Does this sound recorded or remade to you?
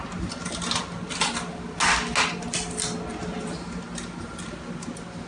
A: recorded